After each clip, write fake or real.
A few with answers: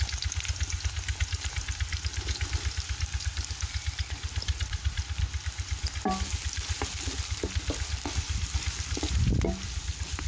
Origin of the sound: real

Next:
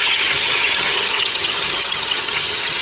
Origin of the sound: fake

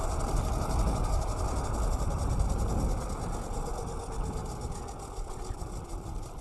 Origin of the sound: real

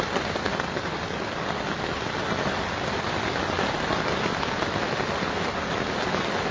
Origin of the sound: real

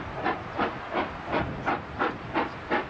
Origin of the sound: real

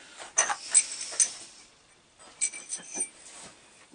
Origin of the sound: real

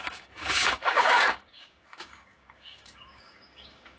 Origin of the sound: fake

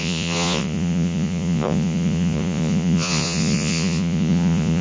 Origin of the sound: fake